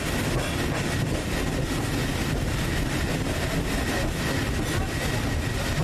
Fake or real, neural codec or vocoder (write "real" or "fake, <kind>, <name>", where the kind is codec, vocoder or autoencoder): real